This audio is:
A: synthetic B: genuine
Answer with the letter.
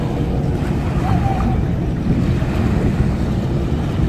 B